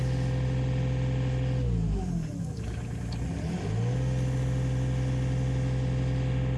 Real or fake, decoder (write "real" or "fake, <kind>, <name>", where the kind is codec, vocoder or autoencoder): real